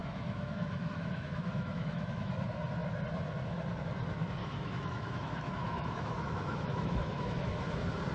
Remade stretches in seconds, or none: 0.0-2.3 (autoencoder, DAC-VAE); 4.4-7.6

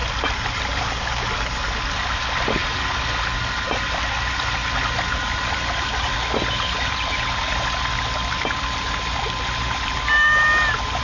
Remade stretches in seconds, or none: none

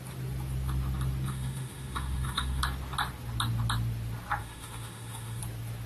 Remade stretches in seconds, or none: 1.3-2.6 (autoencoder, DAC-VAE); 4.4-5.4

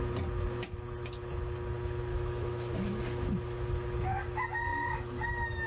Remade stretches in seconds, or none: 2.1-3.0 (autoencoder, DAC-VAE)

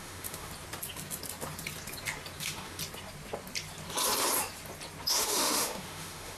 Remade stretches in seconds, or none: 0.0-0.5 (autoencoder, DAC-VAE); 2.4-2.8; 5.1-6.4